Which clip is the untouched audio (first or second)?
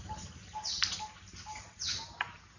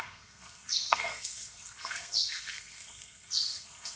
first